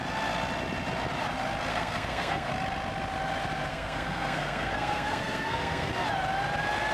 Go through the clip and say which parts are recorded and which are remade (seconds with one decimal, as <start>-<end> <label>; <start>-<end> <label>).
0.0-1.7 recorded; 1.7-2.5 remade; 2.5-3.7 recorded; 3.7-5.9 remade; 5.9-6.9 recorded